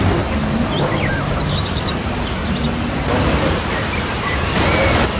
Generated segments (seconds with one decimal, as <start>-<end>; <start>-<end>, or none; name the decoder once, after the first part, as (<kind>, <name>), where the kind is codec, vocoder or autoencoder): 0.0-2.4 (vocoder, BigVGAN v2); 3.6-5.2